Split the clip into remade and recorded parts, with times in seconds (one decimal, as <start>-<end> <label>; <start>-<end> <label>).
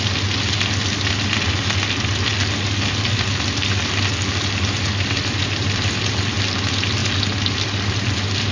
0.0-8.5 recorded